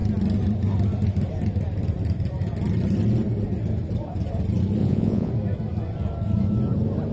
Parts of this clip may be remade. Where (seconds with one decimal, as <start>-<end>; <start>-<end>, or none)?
4.8-5.3